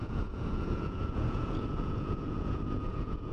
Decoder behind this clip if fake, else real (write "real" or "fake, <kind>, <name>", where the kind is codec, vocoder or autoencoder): fake, vocoder, Vocos